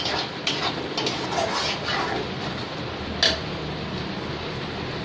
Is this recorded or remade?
recorded